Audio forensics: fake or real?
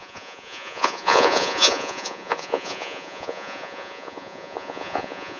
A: fake